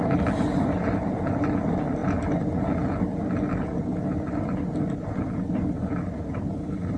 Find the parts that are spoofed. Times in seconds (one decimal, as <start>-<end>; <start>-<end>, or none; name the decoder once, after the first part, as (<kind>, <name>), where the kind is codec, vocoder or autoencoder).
0.0-2.0 (vocoder, BigVGAN v2); 4.9-7.0